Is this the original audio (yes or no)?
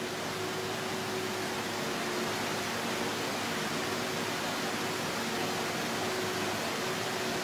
yes